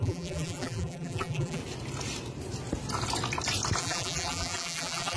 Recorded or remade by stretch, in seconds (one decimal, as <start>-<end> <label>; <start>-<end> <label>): 0.0-1.6 remade; 1.6-3.8 recorded; 3.8-5.2 remade